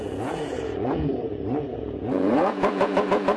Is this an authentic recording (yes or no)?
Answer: no